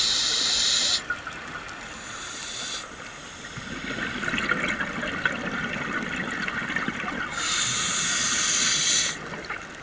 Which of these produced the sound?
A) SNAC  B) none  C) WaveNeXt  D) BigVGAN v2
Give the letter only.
B